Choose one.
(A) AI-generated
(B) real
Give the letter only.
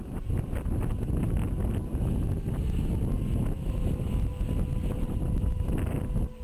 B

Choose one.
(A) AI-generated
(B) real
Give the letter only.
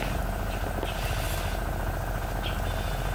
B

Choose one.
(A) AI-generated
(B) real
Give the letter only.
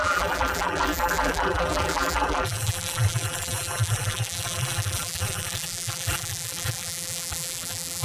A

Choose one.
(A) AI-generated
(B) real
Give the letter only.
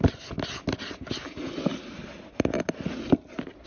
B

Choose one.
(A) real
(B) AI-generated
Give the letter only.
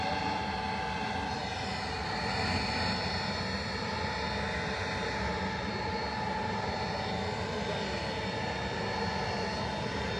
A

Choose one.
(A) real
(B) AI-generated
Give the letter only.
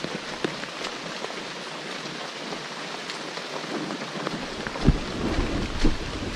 A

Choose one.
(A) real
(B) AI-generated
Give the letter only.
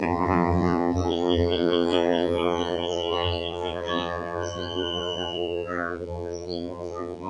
B